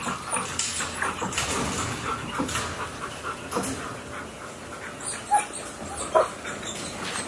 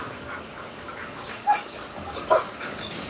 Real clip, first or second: first